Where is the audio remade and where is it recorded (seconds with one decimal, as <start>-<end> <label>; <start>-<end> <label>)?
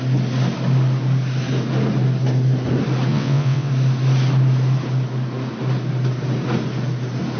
0.0-3.1 recorded; 3.1-3.7 remade; 3.7-7.4 recorded